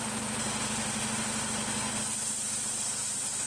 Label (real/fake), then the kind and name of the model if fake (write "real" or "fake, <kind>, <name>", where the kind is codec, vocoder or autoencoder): real